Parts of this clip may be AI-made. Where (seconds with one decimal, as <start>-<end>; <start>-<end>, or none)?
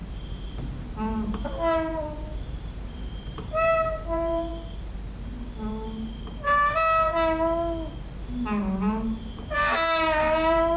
1.4-4.5; 9.3-10.8